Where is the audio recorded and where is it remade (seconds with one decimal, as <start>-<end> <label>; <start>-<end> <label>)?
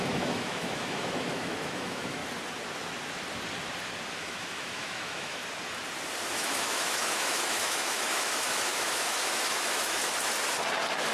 0.0-2.2 remade; 2.2-4.1 recorded; 4.1-5.4 remade; 5.4-6.3 recorded; 6.3-10.0 remade; 10.0-11.1 recorded